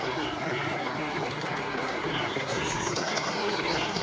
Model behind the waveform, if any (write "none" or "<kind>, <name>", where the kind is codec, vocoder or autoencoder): codec, SNAC